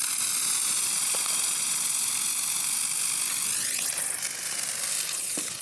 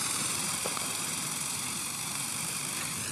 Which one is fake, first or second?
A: second